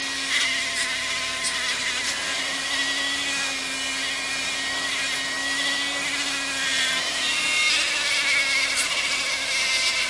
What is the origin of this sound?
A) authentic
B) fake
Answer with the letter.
A